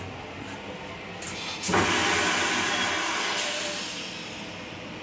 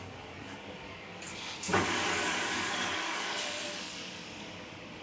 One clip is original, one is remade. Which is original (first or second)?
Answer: first